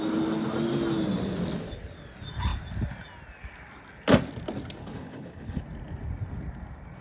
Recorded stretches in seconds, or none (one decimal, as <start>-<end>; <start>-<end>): 0.0-4.8; 5.6-7.0